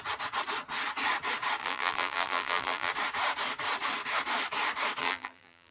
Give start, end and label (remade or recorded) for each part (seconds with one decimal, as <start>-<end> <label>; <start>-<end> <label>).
0.0-1.6 recorded; 1.6-2.9 remade; 2.9-5.0 recorded; 5.0-5.7 remade